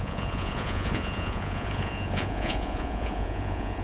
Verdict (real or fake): fake